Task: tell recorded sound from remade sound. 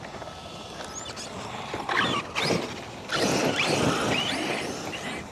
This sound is recorded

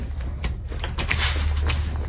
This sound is recorded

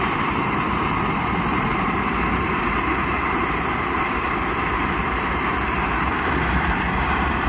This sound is remade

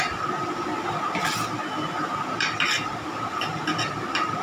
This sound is recorded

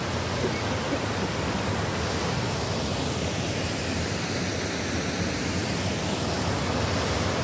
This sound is recorded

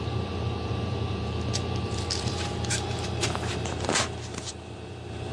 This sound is remade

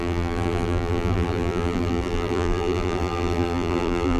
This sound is remade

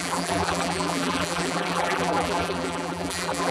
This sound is remade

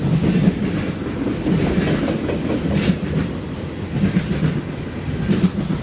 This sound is recorded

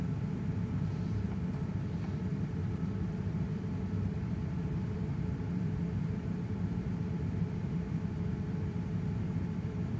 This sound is remade